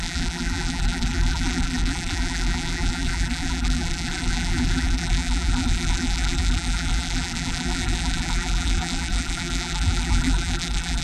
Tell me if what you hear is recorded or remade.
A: remade